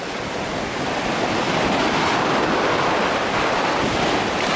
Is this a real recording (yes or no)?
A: yes